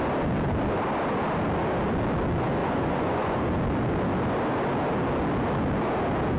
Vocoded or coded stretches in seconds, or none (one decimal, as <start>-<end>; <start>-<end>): 2.6-3.4